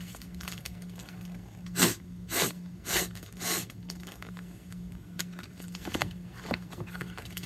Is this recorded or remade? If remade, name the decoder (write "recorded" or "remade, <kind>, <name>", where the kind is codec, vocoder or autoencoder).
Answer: remade, codec, SNAC